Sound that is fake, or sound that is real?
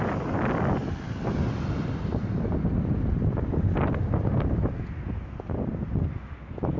real